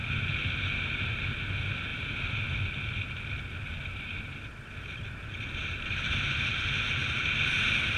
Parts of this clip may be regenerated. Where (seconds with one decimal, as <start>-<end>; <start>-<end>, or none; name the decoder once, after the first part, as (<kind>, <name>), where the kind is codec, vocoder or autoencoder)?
none